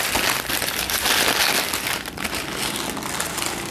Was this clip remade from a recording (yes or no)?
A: no